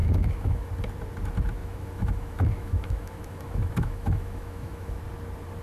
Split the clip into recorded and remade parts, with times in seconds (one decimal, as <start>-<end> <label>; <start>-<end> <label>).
0.0-0.7 remade; 0.7-1.6 recorded; 1.6-5.0 remade; 5.0-5.6 recorded